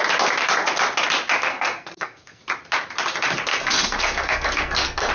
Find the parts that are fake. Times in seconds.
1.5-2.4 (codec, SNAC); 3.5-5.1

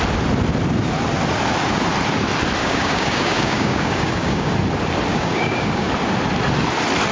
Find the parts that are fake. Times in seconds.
2.6-4.5 (codec, DAC); 5.1-5.9

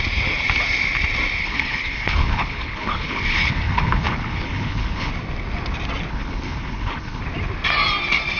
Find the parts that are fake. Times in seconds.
1.4-5.1 (codec, HILCodec); 6.1-7.2

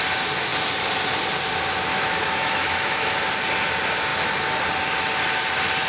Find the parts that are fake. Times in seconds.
1.9-3.1 (autoencoder, DAC-VAE)

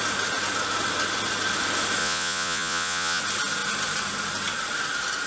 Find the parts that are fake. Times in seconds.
2.0-3.2 (vocoder, Vocos)

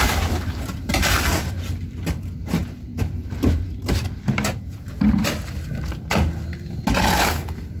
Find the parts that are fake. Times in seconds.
none

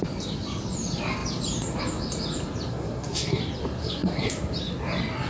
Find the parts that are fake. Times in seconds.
2.7-3.4 (codec, SNAC); 3.8-4.3

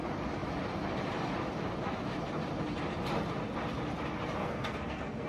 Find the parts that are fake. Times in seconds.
4.4-5.3 (codec, SNAC)